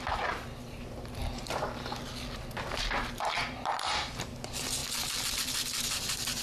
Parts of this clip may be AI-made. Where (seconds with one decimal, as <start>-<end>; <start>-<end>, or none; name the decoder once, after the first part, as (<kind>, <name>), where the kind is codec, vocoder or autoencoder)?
0.0-1.2 (vocoder, BigVGAN v2); 3.2-6.4